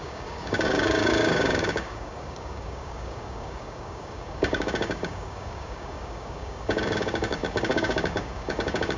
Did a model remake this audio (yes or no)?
yes